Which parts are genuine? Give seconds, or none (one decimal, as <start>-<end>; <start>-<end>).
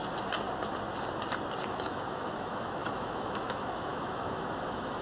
0.0-1.7